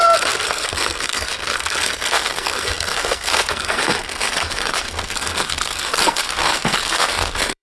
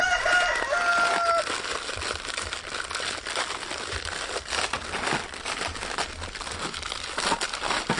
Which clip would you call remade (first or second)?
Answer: first